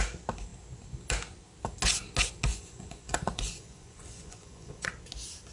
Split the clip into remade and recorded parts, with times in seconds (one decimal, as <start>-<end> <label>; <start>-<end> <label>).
0.0-2.5 recorded; 2.5-4.9 remade; 4.9-5.5 recorded